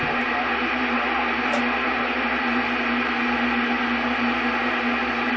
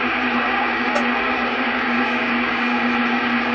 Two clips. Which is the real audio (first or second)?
first